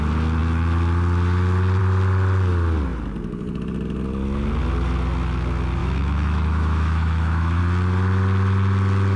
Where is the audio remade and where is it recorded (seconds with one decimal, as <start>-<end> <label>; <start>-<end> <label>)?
0.0-5.8 recorded; 5.8-7.6 remade; 7.6-9.2 recorded